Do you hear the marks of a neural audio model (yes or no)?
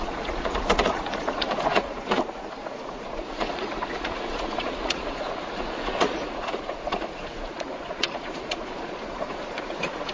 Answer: yes